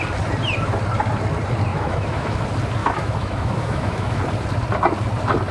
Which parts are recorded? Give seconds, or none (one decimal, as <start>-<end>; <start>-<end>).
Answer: 0.0-1.7; 2.4-2.8; 4.2-5.5